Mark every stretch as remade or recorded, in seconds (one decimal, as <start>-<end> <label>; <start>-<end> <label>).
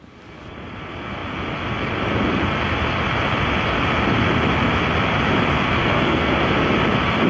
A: 0.0-5.8 recorded; 5.8-6.3 remade; 6.3-7.3 recorded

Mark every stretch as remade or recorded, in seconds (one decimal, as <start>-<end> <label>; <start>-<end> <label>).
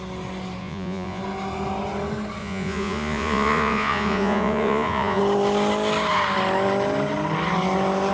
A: 0.0-0.6 recorded; 0.6-1.2 remade; 1.2-2.4 recorded; 2.4-5.2 remade; 5.2-8.1 recorded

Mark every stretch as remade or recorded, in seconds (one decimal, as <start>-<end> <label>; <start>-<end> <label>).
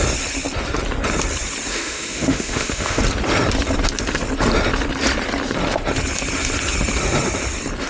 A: 0.0-1.7 recorded; 1.7-3.0 remade; 3.0-7.9 recorded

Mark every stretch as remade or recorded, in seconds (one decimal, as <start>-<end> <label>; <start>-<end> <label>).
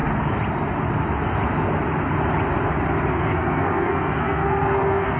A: 0.0-3.1 recorded; 3.1-5.2 remade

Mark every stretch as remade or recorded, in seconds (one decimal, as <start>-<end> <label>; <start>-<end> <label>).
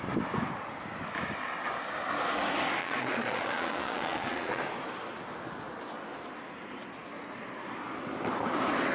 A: 0.0-2.8 recorded; 2.8-4.6 remade; 4.6-8.9 recorded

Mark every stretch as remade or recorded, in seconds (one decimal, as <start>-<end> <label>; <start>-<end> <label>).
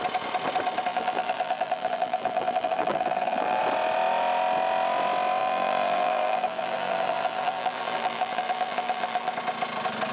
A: 0.0-0.9 recorded; 0.9-3.6 remade; 3.6-5.4 recorded; 5.4-9.3 remade; 9.3-10.1 recorded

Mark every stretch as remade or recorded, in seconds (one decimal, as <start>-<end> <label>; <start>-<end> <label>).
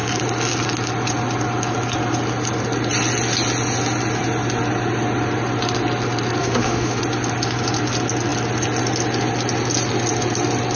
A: 0.0-6.4 recorded; 6.4-7.0 remade; 7.0-10.8 recorded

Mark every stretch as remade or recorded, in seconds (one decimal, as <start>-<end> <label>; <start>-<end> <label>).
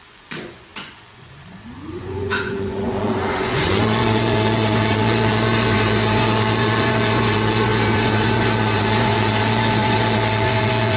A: 0.0-11.0 remade